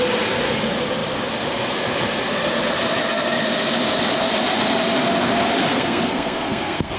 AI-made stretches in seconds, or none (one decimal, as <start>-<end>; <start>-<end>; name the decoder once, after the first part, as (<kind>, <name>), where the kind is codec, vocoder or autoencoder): 5.7-7.0 (codec, SNAC)